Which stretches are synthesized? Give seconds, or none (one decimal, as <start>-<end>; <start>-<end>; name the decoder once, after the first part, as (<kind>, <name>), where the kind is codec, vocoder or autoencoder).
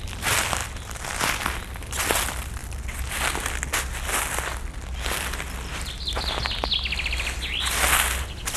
none